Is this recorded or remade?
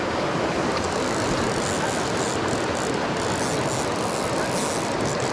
recorded